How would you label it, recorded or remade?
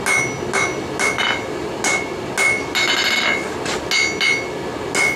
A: recorded